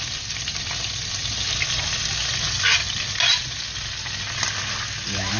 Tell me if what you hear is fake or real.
real